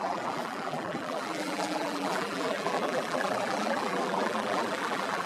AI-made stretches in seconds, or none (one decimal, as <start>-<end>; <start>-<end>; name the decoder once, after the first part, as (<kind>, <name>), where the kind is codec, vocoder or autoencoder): 0.0-5.3 (vocoder, BigVGAN v2)